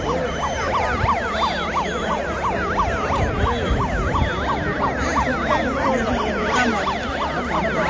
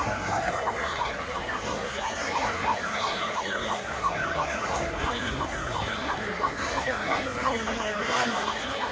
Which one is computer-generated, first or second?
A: second